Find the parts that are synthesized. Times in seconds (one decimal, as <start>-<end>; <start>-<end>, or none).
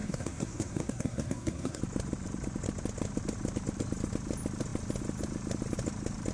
0.0-1.8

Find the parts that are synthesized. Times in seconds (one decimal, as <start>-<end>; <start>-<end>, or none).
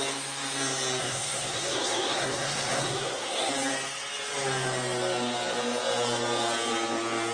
1.0-3.5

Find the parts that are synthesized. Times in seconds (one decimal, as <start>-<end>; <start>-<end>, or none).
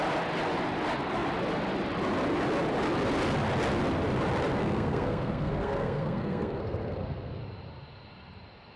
4.6-7.4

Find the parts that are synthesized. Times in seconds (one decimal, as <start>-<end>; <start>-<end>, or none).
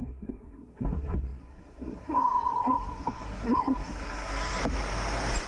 0.0-4.6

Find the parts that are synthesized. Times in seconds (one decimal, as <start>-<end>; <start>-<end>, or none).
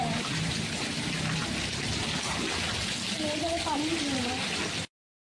none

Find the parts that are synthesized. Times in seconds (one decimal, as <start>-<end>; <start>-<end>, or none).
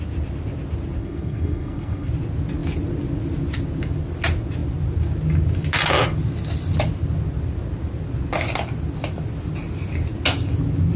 1.0-2.1